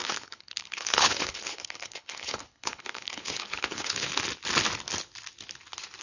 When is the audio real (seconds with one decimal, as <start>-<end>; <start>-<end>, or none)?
4.1-6.0